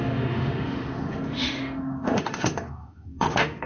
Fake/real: fake